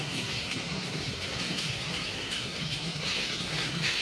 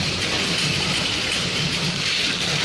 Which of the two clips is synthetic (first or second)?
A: first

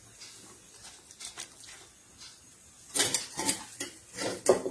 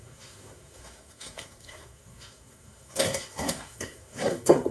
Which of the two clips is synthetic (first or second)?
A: second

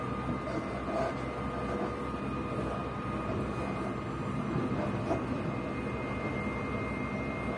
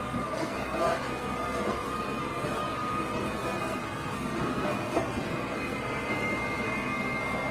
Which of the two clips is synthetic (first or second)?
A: second